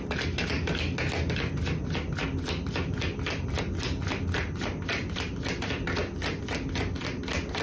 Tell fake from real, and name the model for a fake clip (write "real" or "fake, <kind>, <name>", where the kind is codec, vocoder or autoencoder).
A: real